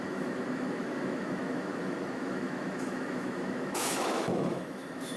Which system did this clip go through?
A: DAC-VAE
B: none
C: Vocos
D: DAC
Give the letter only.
A